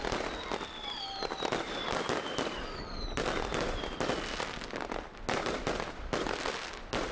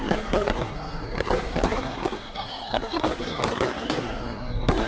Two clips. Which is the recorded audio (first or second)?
first